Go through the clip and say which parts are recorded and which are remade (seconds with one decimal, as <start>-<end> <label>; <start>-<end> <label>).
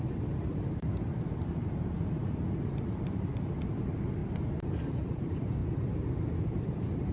0.0-2.2 remade; 2.2-2.8 recorded; 2.8-4.2 remade; 4.2-4.8 recorded; 4.8-5.6 remade; 5.6-6.4 recorded; 6.4-7.1 remade